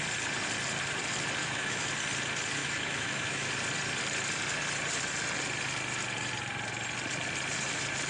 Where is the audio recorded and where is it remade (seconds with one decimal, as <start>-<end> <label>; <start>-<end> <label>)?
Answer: 0.0-1.4 recorded; 1.4-1.9 remade; 1.9-2.6 recorded; 2.6-3.5 remade; 3.5-8.1 recorded